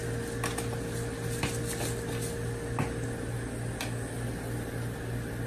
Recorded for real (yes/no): yes